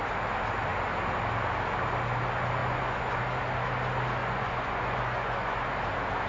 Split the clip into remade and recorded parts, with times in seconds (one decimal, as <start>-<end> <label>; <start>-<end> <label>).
0.0-2.6 recorded; 2.6-3.2 remade; 3.2-4.2 recorded; 4.2-5.7 remade; 5.7-6.3 recorded